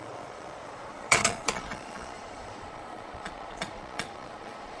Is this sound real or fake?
fake